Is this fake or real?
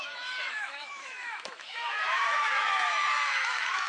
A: fake